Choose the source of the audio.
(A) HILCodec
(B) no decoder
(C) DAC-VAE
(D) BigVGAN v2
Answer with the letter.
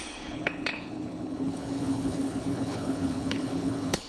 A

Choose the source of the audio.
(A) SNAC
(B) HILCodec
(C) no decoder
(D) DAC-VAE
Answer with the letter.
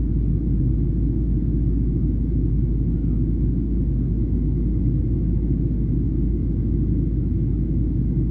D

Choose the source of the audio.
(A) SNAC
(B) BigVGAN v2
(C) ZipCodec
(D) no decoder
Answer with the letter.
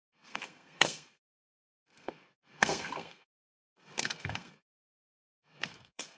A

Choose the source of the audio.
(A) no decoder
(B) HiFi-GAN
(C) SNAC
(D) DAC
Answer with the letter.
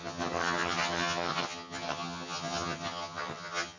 B